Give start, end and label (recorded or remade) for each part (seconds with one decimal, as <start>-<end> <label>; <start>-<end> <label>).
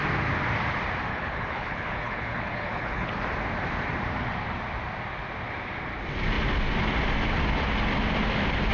0.0-1.1 recorded; 1.1-3.1 remade; 3.1-8.7 recorded